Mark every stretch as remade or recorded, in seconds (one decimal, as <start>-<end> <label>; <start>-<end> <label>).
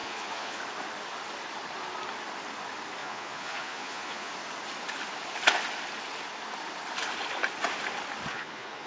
0.0-0.6 remade; 0.6-3.0 recorded; 3.0-4.3 remade; 4.3-8.3 recorded; 8.3-8.9 remade